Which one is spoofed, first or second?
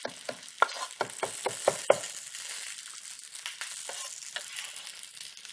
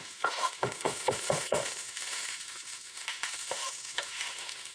second